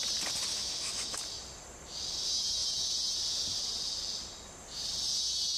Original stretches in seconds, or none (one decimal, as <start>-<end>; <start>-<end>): 0.0-0.5; 1.2-5.6